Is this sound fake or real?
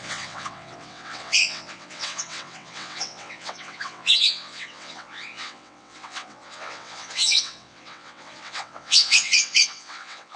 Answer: fake